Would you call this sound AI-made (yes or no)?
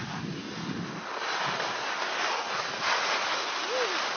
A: no